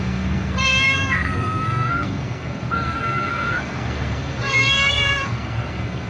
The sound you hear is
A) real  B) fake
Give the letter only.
B